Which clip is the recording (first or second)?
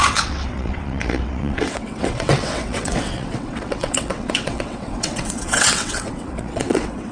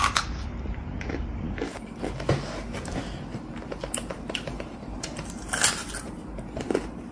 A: second